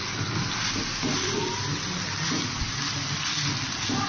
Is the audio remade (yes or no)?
no